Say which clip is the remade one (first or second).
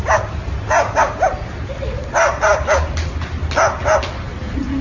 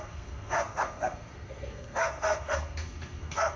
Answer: second